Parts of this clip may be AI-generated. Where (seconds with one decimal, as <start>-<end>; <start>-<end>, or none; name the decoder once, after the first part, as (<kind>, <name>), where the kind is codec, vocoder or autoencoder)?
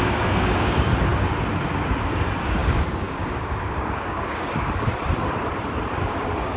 0.0-0.9 (codec, DAC); 2.0-4.9; 6.0-6.6